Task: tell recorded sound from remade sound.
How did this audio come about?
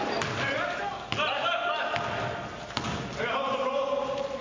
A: recorded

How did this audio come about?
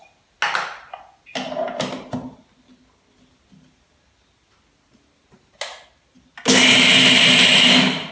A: recorded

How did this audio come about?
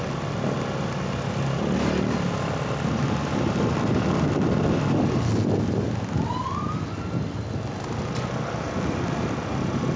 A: recorded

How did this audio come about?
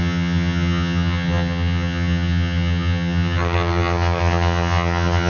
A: remade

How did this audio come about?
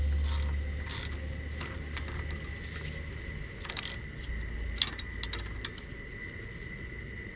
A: recorded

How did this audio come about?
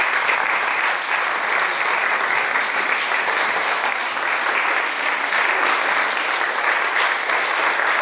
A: recorded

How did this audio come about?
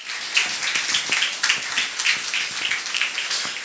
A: recorded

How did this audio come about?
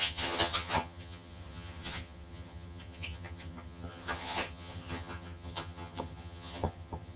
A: remade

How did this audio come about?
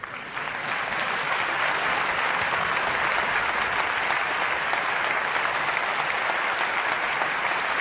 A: recorded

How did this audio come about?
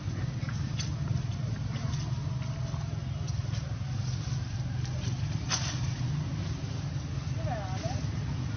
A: recorded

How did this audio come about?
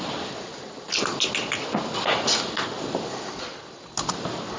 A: recorded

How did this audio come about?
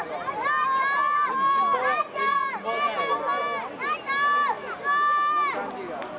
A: recorded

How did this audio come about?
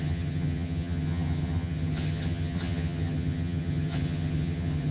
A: remade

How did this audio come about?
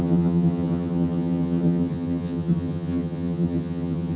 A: remade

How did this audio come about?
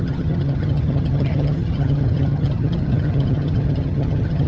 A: remade